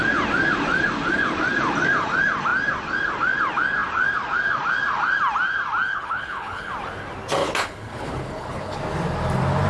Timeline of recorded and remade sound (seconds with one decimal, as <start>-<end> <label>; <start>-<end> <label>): 0.0-5.9 recorded; 5.9-6.7 remade; 6.7-7.4 recorded; 7.4-8.8 remade; 8.8-9.7 recorded